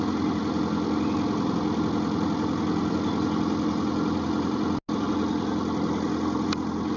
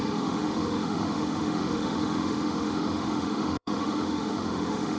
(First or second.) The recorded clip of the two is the first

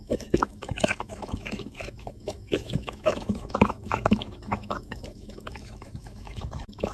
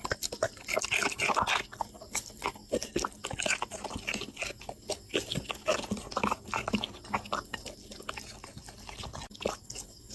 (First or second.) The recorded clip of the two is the second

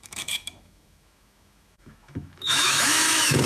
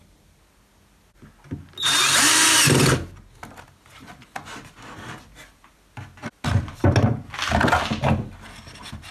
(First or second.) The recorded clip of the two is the second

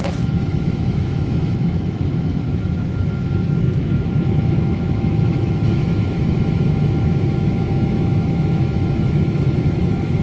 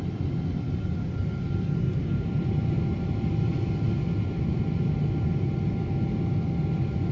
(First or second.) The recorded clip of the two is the second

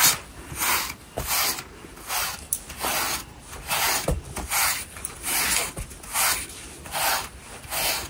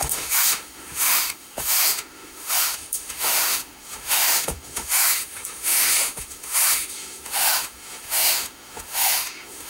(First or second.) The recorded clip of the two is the first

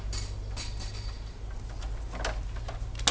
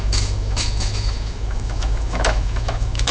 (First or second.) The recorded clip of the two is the first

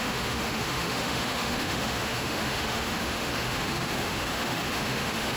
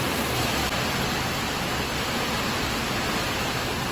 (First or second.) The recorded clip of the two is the second